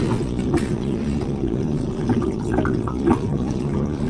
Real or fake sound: fake